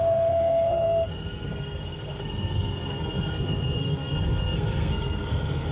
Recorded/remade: remade